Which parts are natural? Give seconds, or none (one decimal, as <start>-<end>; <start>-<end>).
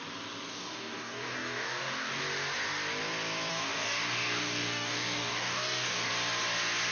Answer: 0.0-0.5; 2.2-3.5; 6.1-6.9